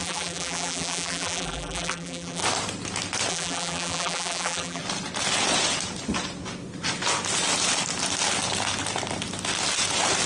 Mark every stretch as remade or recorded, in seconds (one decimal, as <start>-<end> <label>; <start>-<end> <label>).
0.0-2.4 remade; 2.4-3.3 recorded; 3.3-4.8 remade; 4.8-10.3 recorded

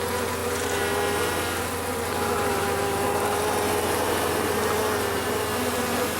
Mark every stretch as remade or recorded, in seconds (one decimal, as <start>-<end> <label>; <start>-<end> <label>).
0.0-6.2 recorded

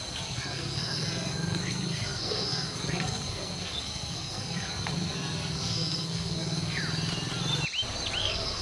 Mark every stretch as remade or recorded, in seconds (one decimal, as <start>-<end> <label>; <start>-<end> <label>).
0.0-6.8 remade; 6.8-8.2 recorded; 8.2-8.6 remade

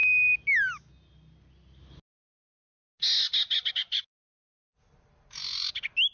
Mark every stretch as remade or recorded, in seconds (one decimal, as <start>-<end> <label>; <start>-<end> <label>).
0.0-6.1 recorded